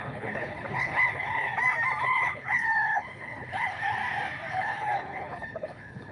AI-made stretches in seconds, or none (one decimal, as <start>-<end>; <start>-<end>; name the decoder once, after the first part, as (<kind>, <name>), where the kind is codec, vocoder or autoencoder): 0.0-1.5 (codec, HILCodec); 2.0-4.0; 4.5-6.1